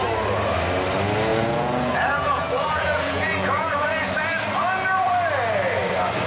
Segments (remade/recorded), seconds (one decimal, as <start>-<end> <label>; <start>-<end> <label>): 0.0-1.3 recorded; 1.3-4.2 remade; 4.2-6.3 recorded